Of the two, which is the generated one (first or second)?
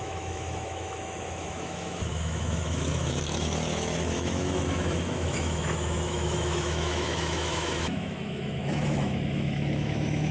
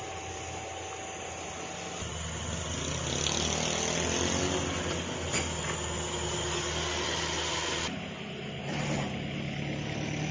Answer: first